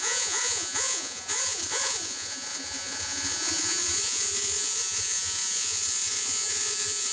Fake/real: fake